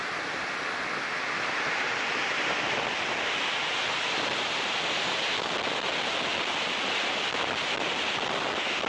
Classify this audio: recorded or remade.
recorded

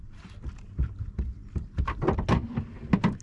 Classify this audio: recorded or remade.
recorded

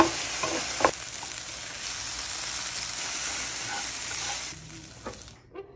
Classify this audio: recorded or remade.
recorded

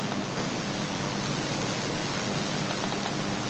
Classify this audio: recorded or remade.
recorded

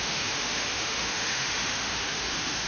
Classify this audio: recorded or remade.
remade